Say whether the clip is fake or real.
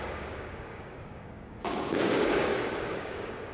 fake